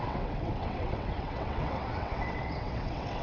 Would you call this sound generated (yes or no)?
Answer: yes